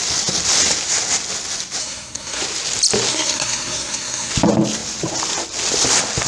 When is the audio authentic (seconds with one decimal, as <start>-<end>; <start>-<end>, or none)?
0.0-1.8; 2.4-3.1; 4.3-6.3